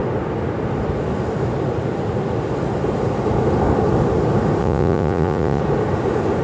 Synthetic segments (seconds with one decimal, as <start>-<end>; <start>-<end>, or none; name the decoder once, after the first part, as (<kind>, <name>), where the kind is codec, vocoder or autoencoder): 4.6-5.6 (vocoder, Vocos)

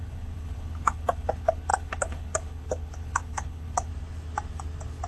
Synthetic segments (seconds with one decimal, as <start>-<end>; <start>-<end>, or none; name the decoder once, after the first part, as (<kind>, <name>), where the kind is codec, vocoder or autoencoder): 0.0-3.9 (codec, HILCodec)